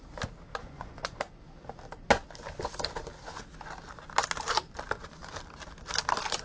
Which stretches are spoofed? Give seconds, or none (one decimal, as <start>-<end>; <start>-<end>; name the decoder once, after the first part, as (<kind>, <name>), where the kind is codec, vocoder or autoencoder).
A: 0.6-1.2 (vocoder, Vocos)